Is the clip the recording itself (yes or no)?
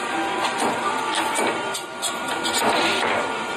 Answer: no